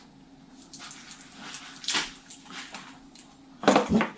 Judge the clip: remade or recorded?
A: recorded